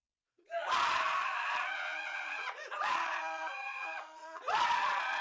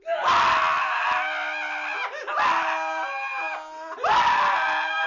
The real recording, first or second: second